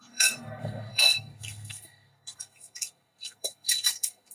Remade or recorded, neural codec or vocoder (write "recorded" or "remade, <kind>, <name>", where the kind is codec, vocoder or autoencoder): remade, codec, SNAC